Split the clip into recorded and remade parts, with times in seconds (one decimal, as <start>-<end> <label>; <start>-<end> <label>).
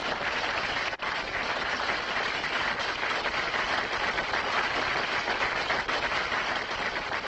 0.0-7.3 recorded